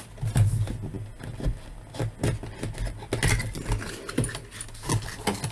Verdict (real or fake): real